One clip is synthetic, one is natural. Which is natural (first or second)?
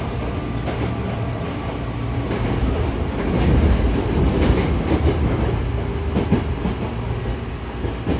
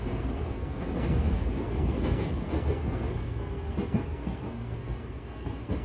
first